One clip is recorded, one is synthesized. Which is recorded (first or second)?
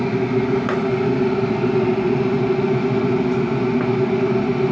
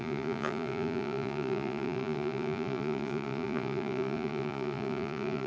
first